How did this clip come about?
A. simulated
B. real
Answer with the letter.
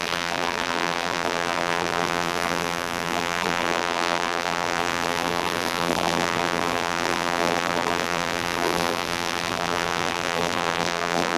A